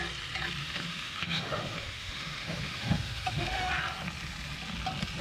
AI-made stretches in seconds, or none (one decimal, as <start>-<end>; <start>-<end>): 0.6-3.7